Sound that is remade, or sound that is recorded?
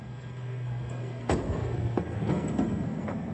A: remade